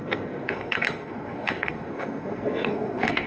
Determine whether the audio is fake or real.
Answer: fake